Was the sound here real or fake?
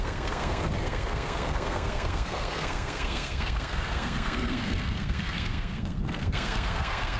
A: fake